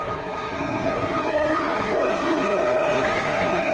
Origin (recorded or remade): remade